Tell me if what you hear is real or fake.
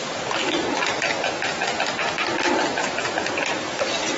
real